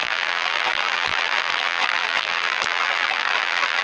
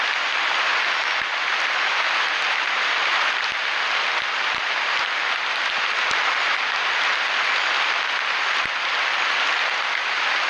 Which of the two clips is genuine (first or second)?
second